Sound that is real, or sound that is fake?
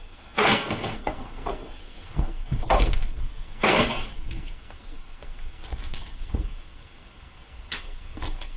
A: fake